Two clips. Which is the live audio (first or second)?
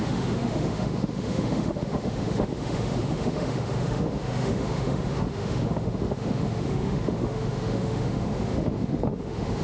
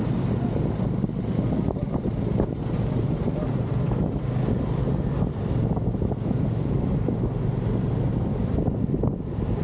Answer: second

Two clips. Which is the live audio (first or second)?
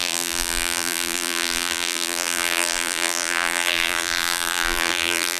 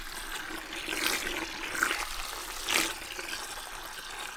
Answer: second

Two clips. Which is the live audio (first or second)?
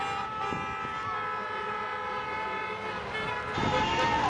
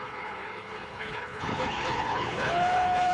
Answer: first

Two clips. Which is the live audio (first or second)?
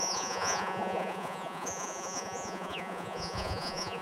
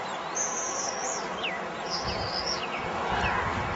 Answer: second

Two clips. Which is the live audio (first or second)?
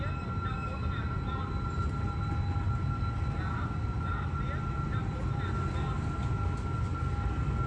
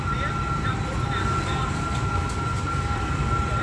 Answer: first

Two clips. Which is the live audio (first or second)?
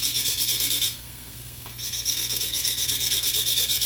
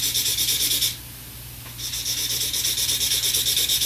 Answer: second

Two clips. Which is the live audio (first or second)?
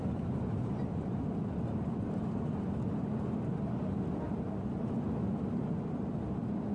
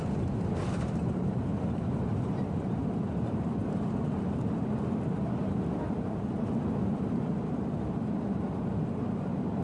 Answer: first